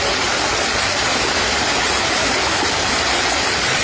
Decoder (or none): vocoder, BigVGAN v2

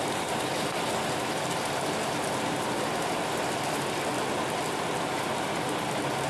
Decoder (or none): none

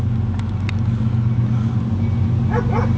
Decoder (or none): none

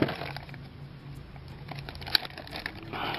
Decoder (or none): none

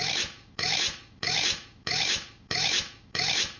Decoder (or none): autoencoder, DAC-VAE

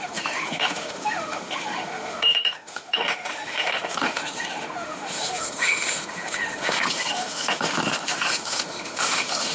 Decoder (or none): autoencoder, DAC-VAE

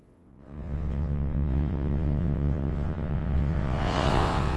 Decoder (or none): vocoder, WaveNeXt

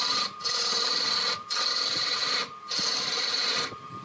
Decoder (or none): vocoder, BigVGAN v2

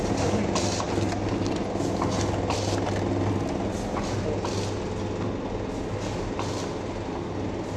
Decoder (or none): none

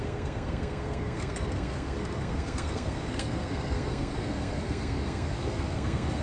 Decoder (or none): codec, SNAC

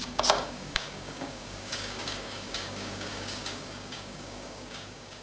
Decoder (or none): codec, DAC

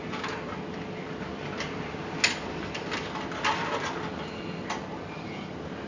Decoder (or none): none